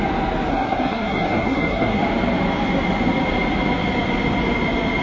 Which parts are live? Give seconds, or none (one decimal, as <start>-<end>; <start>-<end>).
0.0-0.5; 2.0-5.0